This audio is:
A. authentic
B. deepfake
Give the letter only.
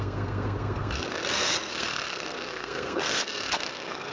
B